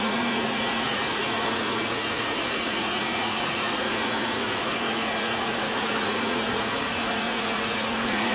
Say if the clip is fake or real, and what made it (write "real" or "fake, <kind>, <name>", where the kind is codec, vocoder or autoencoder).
fake, vocoder, Vocos